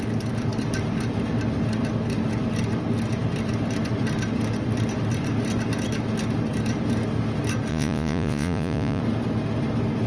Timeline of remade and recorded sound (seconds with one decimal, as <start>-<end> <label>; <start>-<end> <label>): 0.0-7.7 recorded; 7.7-9.0 remade; 9.0-10.1 recorded